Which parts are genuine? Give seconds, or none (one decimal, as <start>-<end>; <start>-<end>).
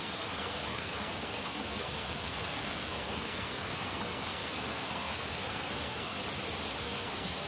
6.2-6.8